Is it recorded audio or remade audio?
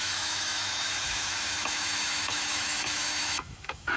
remade